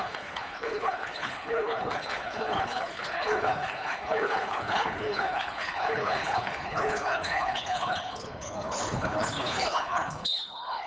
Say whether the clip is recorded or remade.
remade